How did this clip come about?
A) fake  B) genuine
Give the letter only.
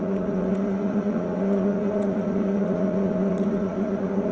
A